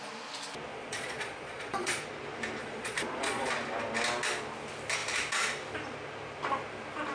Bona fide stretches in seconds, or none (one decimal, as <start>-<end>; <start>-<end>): 0.0-0.7; 2.1-2.6; 3.5-7.1